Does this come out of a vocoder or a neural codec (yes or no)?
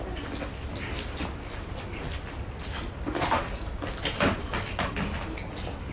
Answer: no